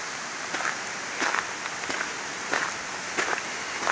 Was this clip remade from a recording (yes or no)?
no